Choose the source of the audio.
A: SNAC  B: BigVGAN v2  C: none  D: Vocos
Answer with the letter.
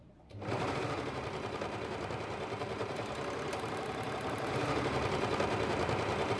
B